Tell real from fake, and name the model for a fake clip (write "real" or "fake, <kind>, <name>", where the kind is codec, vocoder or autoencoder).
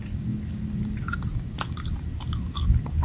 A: real